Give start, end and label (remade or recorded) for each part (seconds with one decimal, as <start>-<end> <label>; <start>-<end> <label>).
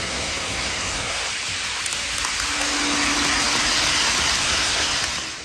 0.0-1.2 remade; 1.2-4.4 recorded; 4.4-4.9 remade; 4.9-5.4 recorded